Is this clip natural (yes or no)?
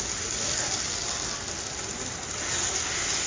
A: yes